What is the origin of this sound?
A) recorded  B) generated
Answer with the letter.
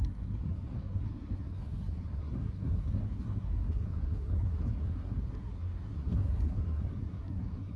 B